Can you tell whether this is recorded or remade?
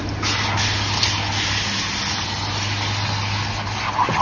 recorded